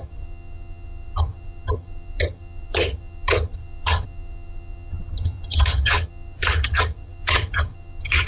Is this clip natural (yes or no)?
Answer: no